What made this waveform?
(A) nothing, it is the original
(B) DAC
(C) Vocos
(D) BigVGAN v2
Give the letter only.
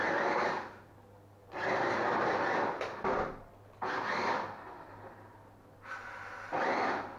A